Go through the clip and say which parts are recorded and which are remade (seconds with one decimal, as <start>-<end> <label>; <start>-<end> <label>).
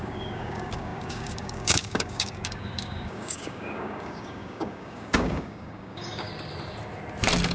0.0-6.3 remade; 6.3-7.5 recorded